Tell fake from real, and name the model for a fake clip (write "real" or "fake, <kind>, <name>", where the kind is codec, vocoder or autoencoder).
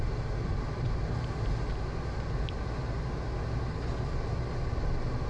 real